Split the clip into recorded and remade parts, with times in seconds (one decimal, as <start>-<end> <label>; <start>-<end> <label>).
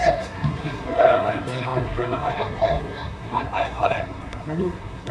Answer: 0.0-5.1 remade